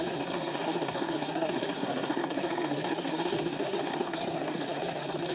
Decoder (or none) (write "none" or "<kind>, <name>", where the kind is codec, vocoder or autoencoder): codec, SNAC